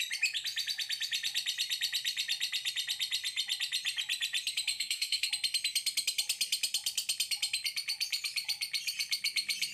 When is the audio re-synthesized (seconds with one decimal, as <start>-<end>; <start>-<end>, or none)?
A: 4.7-5.3

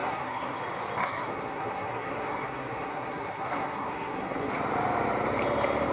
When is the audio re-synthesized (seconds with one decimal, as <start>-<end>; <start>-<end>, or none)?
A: 0.0-0.6; 1.0-4.5

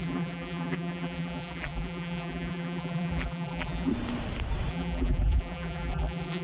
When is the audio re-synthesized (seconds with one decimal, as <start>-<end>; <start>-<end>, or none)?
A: 0.0-3.9; 4.7-6.4

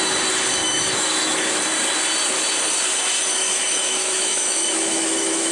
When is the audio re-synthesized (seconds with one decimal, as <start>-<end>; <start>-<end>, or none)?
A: 0.6-1.6; 3.3-5.5

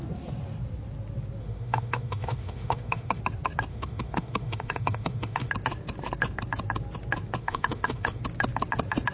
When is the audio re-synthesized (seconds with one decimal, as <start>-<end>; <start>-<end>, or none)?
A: 1.4-3.2; 3.7-5.5; 7.4-8.2

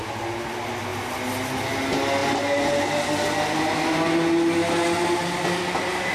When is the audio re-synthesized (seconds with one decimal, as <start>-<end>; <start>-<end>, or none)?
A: none

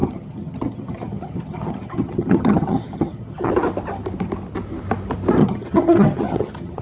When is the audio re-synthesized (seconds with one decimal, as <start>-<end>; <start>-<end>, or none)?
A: 0.0-3.5; 5.4-6.8

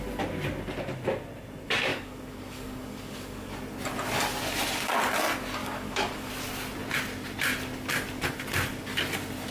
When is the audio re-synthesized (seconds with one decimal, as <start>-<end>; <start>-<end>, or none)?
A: 1.9-3.5; 5.6-6.3